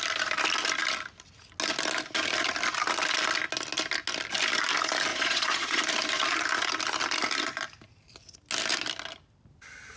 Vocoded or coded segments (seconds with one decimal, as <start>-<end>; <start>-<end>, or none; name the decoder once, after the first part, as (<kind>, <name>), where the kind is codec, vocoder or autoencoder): 5.1-5.8 (vocoder, Vocos)